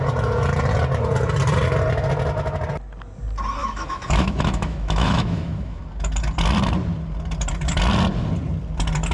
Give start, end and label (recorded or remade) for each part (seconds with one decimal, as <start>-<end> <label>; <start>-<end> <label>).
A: 0.0-3.6 recorded; 3.6-5.8 remade; 5.8-9.1 recorded